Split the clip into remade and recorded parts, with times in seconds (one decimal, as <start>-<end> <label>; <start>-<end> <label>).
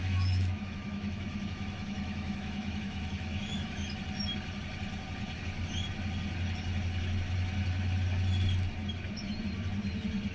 0.0-4.0 remade; 4.0-10.3 recorded